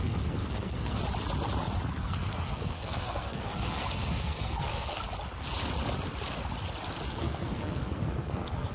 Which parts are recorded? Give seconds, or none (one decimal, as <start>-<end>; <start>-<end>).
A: 1.0-2.0; 5.0-7.1